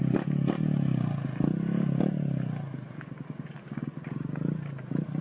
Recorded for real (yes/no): yes